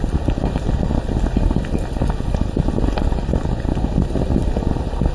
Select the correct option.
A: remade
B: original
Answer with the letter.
B